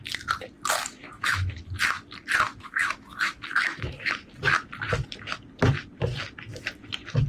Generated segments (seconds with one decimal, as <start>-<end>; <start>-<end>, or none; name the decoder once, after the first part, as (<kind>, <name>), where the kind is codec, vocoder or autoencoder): 0.8-1.7 (autoencoder, DAC-VAE); 2.5-4.1